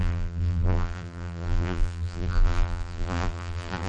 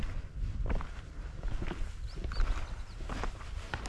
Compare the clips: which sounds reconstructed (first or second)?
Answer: first